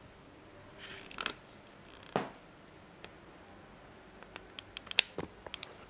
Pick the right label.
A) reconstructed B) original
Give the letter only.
B